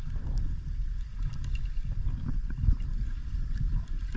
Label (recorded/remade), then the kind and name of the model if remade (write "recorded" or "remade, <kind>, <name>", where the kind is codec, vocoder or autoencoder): recorded